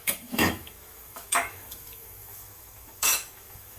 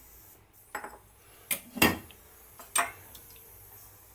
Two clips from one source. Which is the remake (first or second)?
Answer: first